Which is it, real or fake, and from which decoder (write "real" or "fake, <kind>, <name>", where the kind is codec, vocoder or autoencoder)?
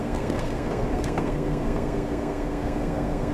fake, codec, SNAC